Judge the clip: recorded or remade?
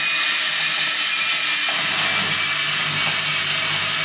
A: recorded